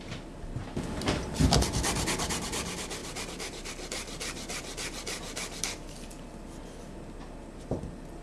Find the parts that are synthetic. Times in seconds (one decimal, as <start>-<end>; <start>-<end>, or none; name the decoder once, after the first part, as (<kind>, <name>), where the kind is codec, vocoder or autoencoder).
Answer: none